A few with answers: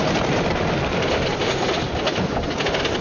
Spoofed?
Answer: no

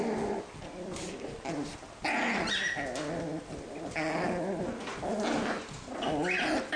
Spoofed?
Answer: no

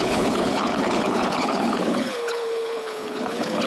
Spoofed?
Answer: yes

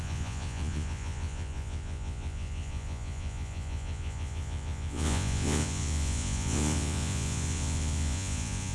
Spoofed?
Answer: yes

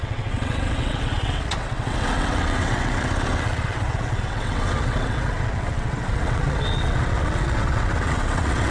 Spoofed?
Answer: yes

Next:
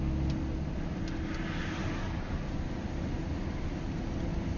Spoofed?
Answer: no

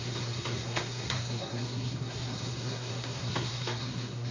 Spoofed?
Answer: yes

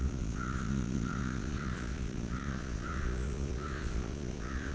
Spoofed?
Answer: yes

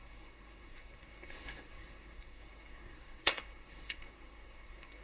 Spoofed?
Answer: yes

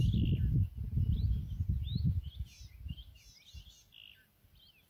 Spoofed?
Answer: no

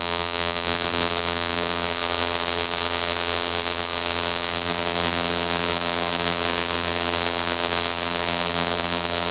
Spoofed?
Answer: yes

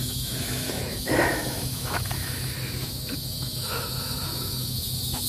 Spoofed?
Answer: yes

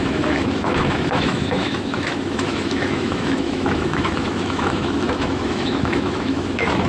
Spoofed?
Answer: yes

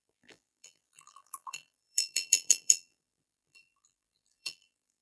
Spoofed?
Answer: yes